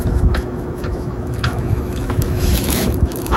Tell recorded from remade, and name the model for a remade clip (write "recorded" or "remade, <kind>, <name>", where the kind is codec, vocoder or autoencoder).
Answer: remade, autoencoder, DAC-VAE